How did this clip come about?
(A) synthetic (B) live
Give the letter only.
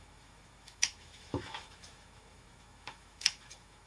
A